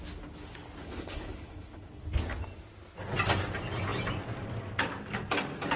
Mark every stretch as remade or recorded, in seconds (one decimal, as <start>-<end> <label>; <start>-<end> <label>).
0.0-0.8 recorded; 0.8-2.0 remade; 2.0-5.8 recorded